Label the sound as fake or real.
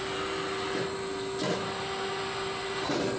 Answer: real